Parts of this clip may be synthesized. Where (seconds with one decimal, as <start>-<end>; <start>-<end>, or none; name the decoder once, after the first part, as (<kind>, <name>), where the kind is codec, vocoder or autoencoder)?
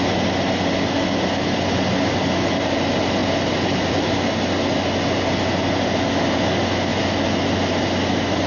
none